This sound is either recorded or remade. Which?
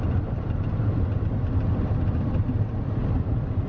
recorded